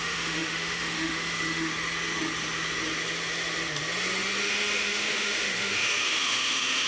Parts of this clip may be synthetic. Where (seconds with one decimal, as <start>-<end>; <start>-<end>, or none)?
0.0-1.7; 4.4-6.9